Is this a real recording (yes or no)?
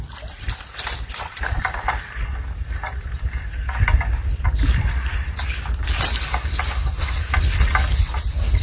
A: yes